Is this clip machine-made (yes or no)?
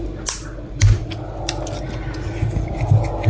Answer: no